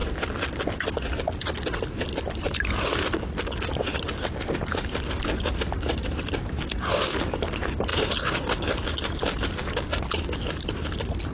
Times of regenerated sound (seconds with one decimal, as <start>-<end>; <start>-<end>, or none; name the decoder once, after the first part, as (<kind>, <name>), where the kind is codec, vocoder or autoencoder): none